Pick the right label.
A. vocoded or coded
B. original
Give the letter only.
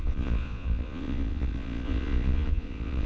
A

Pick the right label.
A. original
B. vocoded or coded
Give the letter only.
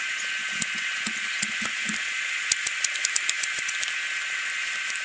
A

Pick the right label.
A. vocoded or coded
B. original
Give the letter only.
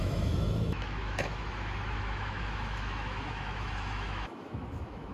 A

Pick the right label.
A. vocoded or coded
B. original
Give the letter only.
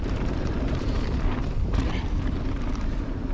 A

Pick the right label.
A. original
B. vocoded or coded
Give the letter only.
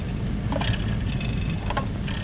A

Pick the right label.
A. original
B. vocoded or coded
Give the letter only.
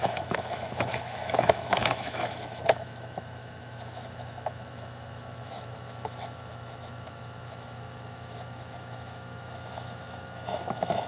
B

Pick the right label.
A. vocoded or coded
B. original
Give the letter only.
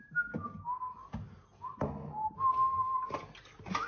B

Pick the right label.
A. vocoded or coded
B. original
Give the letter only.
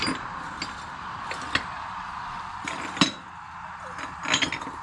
B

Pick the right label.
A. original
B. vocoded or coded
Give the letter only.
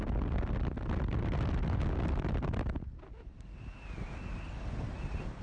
A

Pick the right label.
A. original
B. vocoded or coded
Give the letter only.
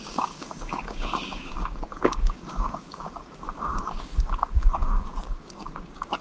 B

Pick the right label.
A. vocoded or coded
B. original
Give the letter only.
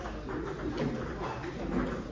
B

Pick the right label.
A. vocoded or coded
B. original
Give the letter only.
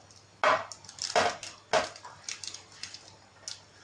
B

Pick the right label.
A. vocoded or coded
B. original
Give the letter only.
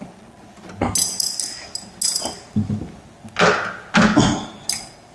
B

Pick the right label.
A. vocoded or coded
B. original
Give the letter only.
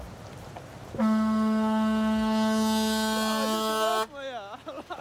B